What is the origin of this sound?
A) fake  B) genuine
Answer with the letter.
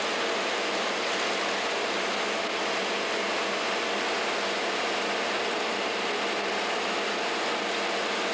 B